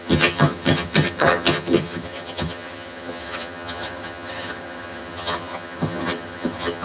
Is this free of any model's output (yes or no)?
no